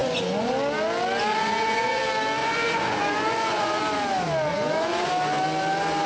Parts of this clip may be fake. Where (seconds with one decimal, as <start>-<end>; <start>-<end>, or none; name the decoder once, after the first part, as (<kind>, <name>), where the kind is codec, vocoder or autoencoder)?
0.0-0.5 (vocoder, Vocos); 1.3-2.0; 2.4-3.8; 4.5-5.1